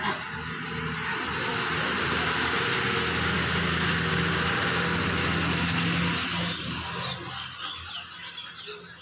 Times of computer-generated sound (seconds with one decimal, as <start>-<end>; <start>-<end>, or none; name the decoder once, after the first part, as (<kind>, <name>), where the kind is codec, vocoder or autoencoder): none